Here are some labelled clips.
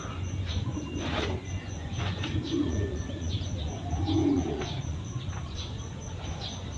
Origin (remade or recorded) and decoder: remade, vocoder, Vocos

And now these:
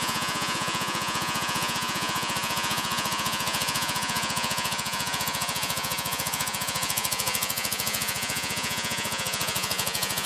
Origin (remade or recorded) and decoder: remade, vocoder, Vocos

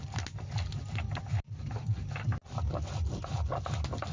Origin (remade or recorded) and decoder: recorded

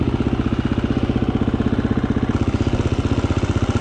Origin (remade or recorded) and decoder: recorded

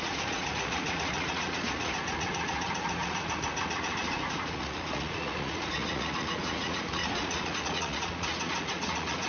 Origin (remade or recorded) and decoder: remade, vocoder, Vocos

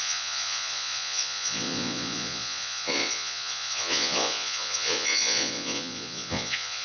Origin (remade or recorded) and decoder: remade, vocoder, Vocos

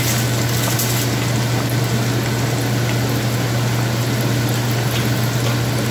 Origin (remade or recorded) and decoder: recorded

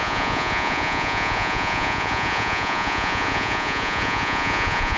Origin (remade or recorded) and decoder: remade, vocoder, Vocos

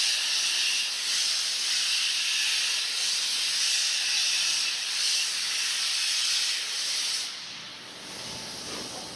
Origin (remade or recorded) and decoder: recorded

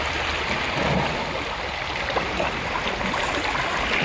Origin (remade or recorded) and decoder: recorded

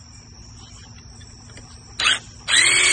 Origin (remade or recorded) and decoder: recorded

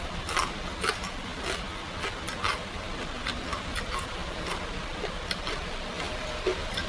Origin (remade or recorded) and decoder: recorded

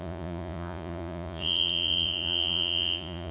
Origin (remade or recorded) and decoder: remade, vocoder, Vocos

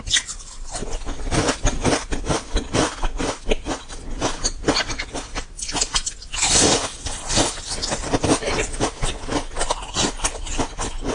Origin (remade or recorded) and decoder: recorded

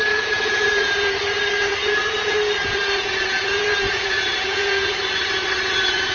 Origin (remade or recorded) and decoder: remade, vocoder, Vocos